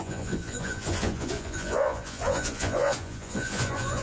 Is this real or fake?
fake